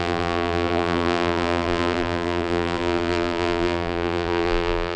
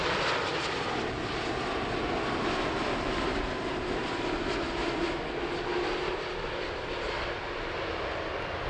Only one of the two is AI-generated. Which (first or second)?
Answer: first